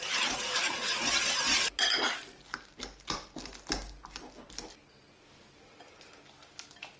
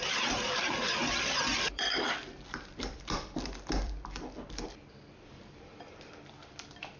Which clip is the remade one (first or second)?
second